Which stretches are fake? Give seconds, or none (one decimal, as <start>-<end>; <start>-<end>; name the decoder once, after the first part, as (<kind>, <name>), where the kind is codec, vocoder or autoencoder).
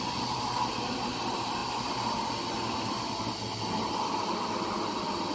none